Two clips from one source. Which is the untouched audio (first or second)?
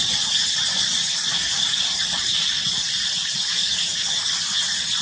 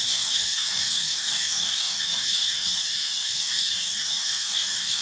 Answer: first